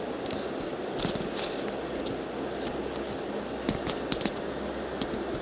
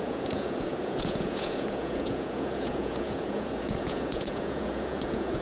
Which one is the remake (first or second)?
second